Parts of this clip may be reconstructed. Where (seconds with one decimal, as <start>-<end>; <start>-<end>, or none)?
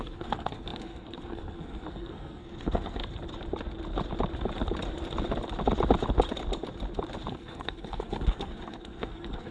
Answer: 0.0-3.0; 7.3-9.5